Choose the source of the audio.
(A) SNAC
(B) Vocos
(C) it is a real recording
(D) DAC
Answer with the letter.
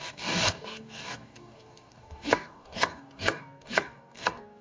D